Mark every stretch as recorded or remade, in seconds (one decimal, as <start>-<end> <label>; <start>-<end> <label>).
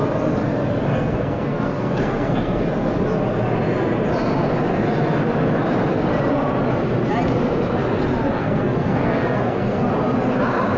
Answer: 0.0-0.9 recorded; 0.9-2.6 remade; 2.6-8.4 recorded; 8.4-9.9 remade; 9.9-10.8 recorded